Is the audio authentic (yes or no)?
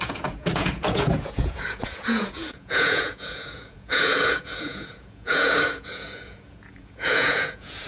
no